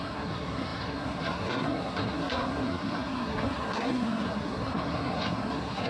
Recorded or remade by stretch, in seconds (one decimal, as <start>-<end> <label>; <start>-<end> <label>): 0.0-5.9 remade

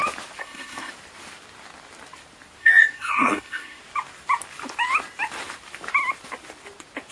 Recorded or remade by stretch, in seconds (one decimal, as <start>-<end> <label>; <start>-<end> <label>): 0.0-0.4 recorded; 0.4-0.9 remade; 0.9-2.6 recorded; 2.6-3.8 remade; 3.8-7.1 recorded

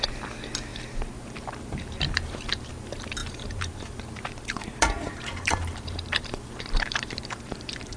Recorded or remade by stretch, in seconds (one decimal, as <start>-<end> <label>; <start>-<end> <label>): 0.0-0.7 recorded; 0.7-2.7 remade; 2.7-3.2 recorded; 3.2-8.0 remade

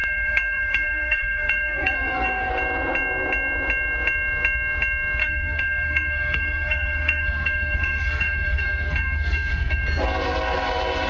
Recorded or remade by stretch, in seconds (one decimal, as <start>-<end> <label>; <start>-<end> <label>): 0.0-2.5 remade; 2.5-5.2 recorded; 5.2-9.8 remade; 9.8-11.1 recorded

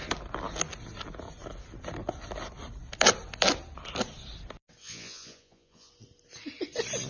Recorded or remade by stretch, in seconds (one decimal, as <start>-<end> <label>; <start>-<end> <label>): 0.0-4.8 recorded; 4.8-5.9 remade; 5.9-7.1 recorded